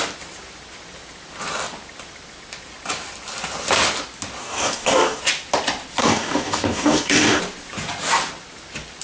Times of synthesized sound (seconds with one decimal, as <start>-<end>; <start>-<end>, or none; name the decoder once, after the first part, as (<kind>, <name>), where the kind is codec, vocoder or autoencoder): 4.4-5.2 (codec, DAC); 6.0-7.4